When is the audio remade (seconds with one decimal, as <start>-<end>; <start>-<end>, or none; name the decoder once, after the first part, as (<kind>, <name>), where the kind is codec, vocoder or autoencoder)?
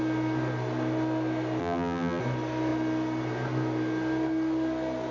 1.6-2.2 (vocoder, BigVGAN v2)